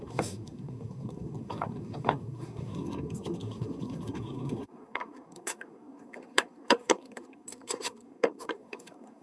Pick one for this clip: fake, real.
fake